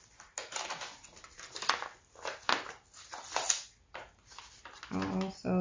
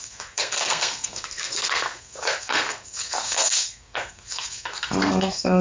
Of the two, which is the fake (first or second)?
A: second